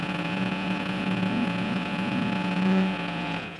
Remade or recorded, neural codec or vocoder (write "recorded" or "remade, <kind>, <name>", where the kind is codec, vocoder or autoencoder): remade, vocoder, Vocos